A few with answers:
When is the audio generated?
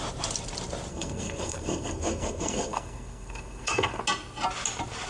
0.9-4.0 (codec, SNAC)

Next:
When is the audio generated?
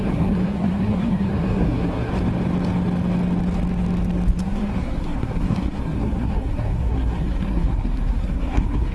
0.0-2.1 (codec, SNAC); 4.4-8.9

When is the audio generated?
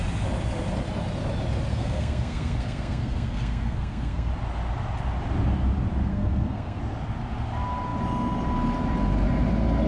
1.7-4.3 (codec, SNAC); 6.1-6.8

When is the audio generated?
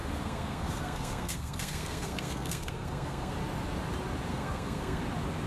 0.0-3.3 (codec, SNAC); 4.3-5.0